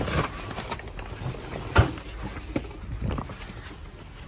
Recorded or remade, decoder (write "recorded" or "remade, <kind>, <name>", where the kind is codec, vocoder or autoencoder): recorded